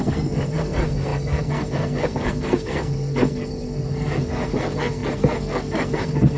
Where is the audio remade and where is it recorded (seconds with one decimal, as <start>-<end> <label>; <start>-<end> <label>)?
0.0-6.4 remade